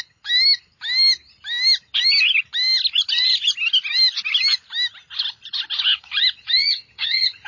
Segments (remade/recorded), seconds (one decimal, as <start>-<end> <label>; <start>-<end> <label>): 0.0-6.6 recorded; 6.6-7.5 remade